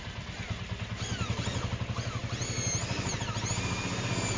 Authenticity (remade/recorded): recorded